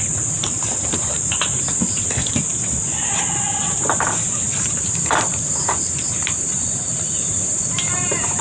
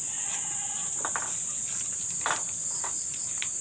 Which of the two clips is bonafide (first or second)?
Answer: second